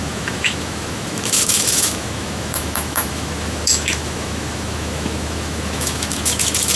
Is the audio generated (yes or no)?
yes